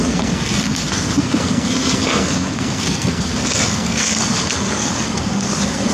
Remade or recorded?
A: remade